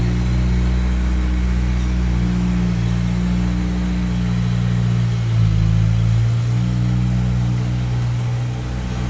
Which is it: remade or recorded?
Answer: recorded